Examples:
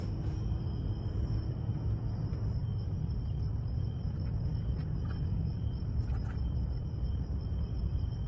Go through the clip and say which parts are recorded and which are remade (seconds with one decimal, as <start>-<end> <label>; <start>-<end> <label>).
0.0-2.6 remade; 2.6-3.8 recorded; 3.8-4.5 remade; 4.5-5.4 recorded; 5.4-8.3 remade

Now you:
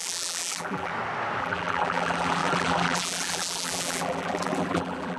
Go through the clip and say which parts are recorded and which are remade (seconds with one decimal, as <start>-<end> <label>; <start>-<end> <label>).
0.0-0.9 remade; 0.9-1.4 recorded; 1.4-5.2 remade

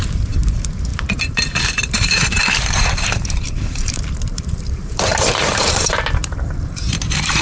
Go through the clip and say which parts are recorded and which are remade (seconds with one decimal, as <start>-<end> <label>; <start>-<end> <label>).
0.0-7.4 remade

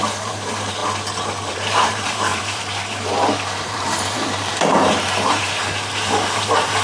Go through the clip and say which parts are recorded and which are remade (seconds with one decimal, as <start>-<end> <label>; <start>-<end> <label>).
0.0-0.8 remade; 0.8-1.5 recorded; 1.5-6.8 remade